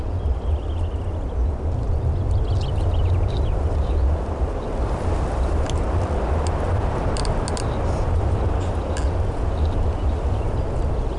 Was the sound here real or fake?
real